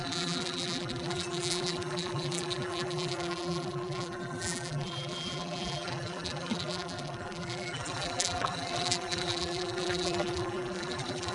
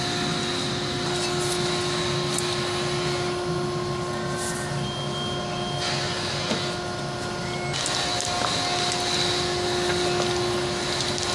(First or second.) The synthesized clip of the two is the first